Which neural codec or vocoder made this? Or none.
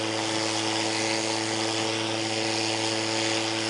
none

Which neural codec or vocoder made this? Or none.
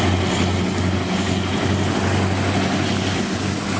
none